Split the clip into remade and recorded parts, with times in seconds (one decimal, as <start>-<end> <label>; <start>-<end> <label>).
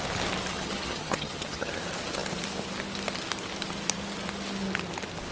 0.0-0.5 recorded; 0.5-1.7 remade; 1.7-5.3 recorded